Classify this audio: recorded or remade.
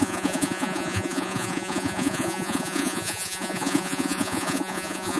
remade